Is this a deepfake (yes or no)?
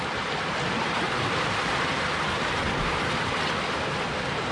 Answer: yes